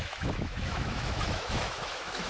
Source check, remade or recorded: remade